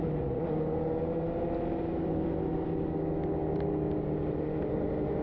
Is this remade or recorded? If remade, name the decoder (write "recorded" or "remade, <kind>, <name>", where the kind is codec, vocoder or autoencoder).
recorded